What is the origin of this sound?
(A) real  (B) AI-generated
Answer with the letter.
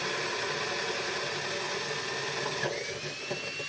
A